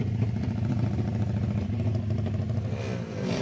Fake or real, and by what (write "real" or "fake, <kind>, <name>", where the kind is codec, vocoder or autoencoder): real